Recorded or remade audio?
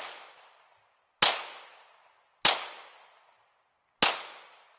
recorded